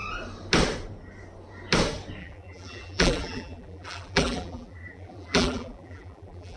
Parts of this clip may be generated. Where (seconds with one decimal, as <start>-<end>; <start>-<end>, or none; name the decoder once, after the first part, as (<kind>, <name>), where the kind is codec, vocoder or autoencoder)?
2.2-6.6 (vocoder, BigVGAN v2)